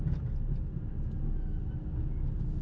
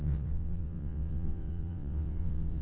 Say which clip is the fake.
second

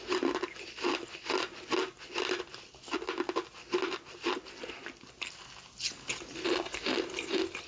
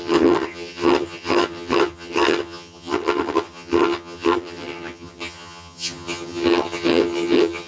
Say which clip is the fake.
second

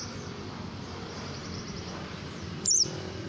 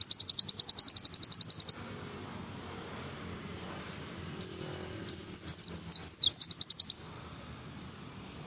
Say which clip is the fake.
first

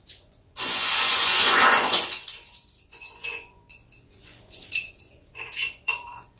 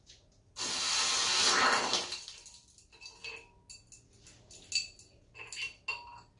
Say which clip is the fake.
first